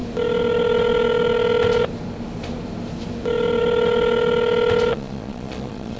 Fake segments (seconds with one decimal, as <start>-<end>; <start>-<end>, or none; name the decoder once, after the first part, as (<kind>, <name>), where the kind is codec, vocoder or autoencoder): 4.9-6.0 (vocoder, Vocos)